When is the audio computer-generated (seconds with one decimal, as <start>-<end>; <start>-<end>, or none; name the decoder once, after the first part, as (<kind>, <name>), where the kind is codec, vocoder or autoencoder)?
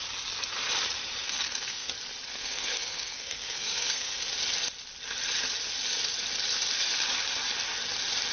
1.2-1.9 (codec, SNAC); 2.3-4.2